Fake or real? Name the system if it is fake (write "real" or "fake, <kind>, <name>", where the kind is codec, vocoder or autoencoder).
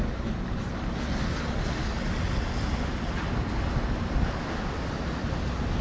real